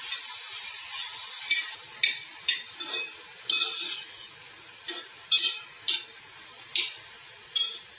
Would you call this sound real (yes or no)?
yes